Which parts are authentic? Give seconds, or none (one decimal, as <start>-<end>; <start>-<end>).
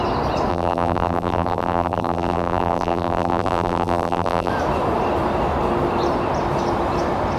0.0-0.5; 4.5-7.4